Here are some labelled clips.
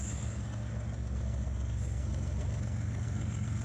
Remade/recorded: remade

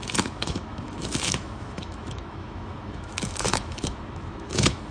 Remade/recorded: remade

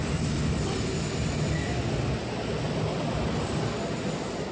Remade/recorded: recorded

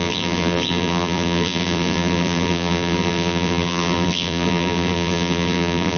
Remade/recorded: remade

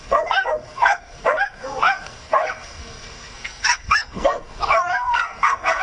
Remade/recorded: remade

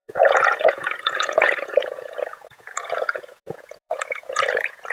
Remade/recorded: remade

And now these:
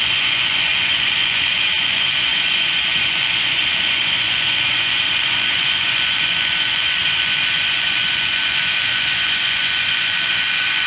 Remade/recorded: remade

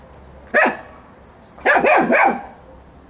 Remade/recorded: recorded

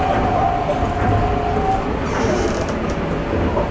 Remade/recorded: recorded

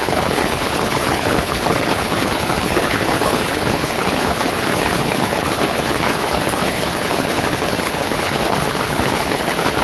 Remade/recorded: remade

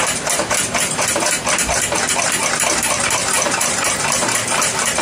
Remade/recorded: remade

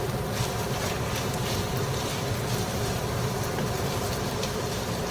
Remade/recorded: remade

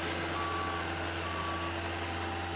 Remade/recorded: recorded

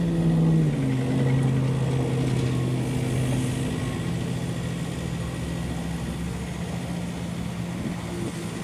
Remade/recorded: recorded